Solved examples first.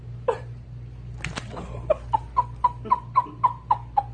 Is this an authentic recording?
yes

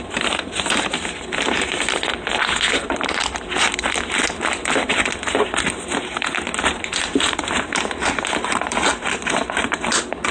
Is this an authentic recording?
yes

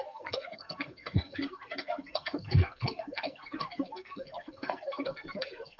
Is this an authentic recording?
no